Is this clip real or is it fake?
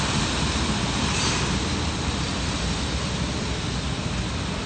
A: real